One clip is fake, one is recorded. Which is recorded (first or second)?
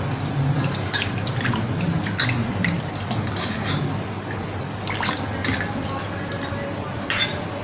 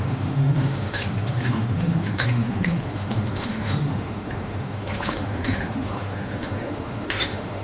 first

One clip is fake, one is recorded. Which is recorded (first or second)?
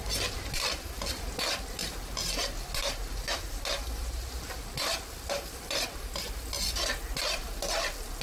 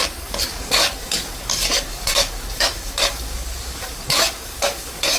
first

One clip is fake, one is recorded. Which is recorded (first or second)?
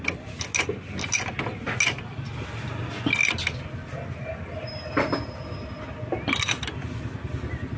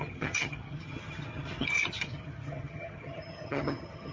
first